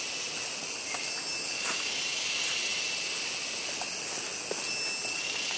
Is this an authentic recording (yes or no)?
yes